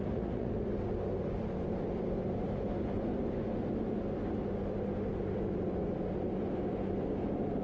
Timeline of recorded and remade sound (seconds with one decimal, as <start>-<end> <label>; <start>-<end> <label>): 0.0-0.5 remade; 0.5-7.6 recorded